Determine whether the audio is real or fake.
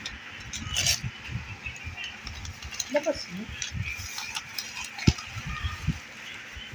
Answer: real